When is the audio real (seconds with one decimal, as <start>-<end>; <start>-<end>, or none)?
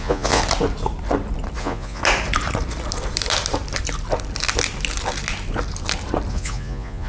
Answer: 0.4-1.6; 2.0-6.3